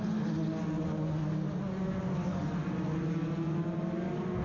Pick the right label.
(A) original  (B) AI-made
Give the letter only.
A